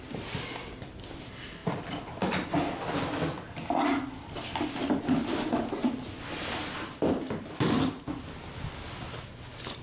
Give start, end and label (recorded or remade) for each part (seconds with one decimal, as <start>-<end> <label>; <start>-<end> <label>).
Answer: 0.0-9.8 recorded